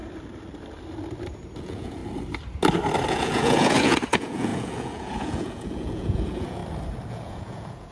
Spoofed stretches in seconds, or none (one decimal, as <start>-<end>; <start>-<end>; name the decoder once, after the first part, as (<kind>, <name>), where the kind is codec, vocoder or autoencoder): 1.6-2.0 (vocoder, Vocos); 3.1-6.6; 7.1-7.9